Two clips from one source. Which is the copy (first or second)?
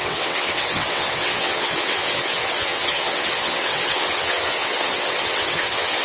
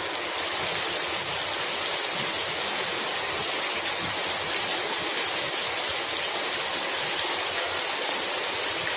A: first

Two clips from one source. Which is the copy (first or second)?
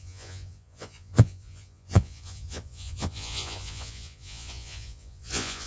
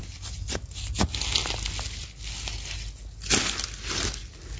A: first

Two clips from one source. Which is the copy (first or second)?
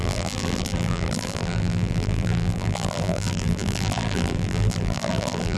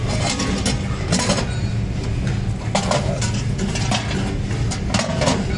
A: first